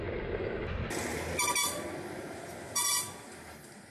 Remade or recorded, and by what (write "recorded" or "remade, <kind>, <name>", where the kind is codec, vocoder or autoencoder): recorded